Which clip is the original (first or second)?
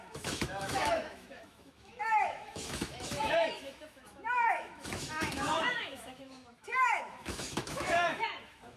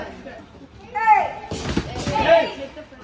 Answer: second